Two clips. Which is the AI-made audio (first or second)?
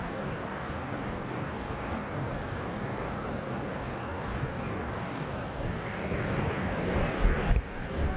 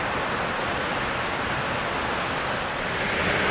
first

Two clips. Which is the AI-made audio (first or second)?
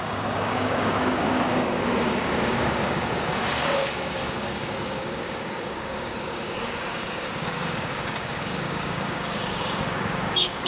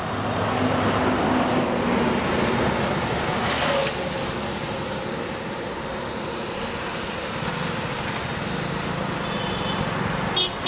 first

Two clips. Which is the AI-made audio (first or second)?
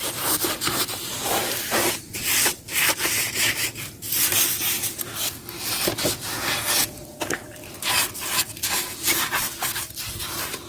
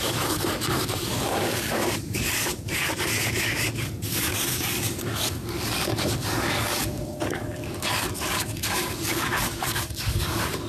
second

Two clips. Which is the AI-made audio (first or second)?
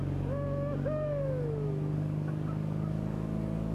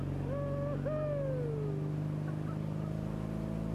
first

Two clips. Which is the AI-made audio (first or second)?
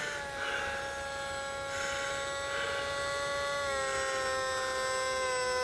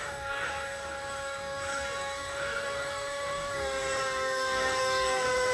second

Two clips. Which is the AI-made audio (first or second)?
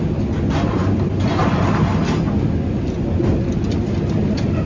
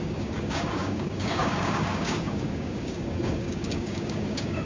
second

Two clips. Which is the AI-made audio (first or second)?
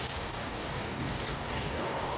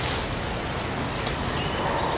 first